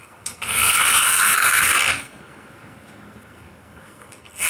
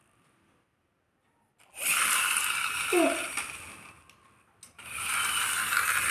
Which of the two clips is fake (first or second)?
first